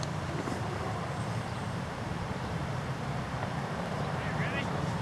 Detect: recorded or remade remade